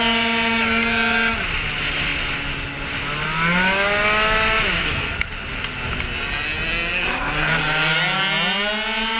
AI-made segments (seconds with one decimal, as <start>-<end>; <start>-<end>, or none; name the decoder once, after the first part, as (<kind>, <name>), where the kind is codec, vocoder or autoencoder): 4.8-5.3 (codec, SNAC); 6.9-7.5